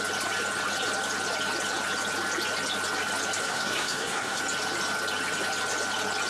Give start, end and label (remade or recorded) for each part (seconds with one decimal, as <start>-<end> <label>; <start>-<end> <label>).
0.0-3.4 recorded; 3.4-4.4 remade; 4.4-6.3 recorded